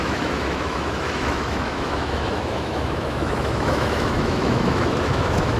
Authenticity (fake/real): fake